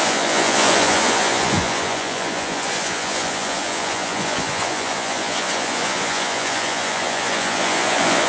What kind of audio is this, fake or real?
fake